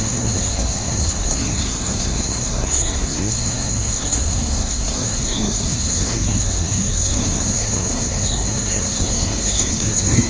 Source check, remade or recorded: remade